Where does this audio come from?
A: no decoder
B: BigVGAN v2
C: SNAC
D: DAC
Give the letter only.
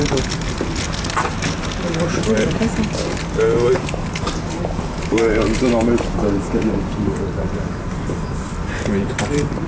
A